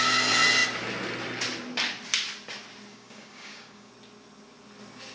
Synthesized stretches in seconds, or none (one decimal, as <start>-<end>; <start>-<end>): 2.9-3.9